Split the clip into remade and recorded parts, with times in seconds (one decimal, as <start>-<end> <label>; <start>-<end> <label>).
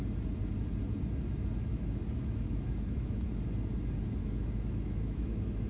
0.0-1.7 recorded; 1.7-3.3 remade; 3.3-4.2 recorded; 4.2-5.7 remade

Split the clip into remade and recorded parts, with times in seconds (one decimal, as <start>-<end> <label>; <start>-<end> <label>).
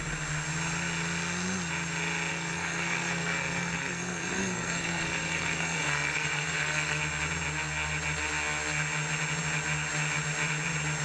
0.0-2.3 recorded; 2.3-7.0 remade; 7.0-11.0 recorded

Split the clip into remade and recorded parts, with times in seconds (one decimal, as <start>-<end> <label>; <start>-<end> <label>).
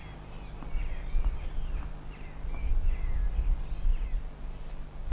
0.0-5.1 recorded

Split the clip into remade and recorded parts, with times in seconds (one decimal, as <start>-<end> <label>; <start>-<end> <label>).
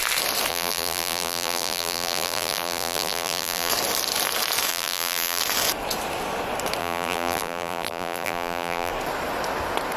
0.0-0.5 recorded; 0.5-3.7 remade; 3.7-4.7 recorded; 4.7-5.4 remade; 5.4-6.8 recorded; 6.8-8.9 remade; 8.9-10.0 recorded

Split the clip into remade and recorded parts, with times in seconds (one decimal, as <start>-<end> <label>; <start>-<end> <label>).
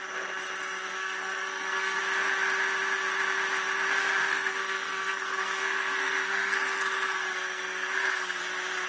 0.0-1.0 recorded; 1.0-2.0 remade; 2.0-4.2 recorded; 4.2-8.4 remade; 8.4-8.9 recorded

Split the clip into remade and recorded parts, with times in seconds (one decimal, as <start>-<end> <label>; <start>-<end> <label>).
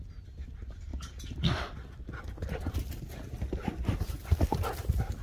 0.0-5.2 recorded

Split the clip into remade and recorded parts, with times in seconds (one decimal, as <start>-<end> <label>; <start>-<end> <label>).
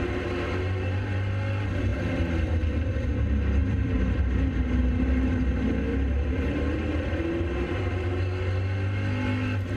0.0-1.9 recorded; 1.9-3.2 remade; 3.2-3.6 recorded; 3.6-4.2 remade; 4.2-5.9 recorded; 5.9-8.2 remade; 8.2-9.8 recorded